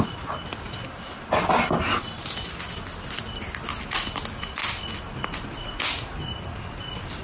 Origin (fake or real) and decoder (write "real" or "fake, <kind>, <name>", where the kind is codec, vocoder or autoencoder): real